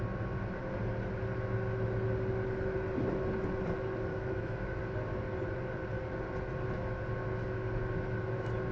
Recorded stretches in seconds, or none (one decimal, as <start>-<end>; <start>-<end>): 0.0-4.1; 4.8-8.7